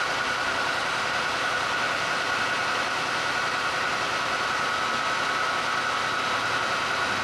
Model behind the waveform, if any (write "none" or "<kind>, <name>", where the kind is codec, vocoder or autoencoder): none